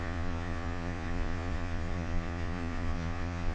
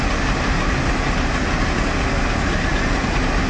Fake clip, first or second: first